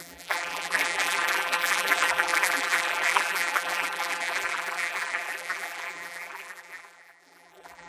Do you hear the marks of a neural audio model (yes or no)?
yes